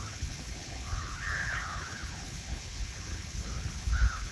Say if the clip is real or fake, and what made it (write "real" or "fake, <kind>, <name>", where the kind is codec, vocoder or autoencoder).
fake, codec, HILCodec